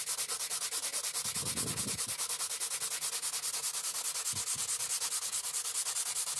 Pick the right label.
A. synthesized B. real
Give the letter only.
B